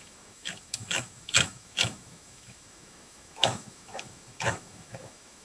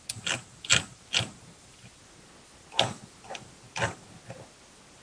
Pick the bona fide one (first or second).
second